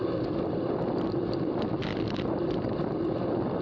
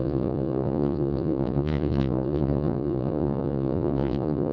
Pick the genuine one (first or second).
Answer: first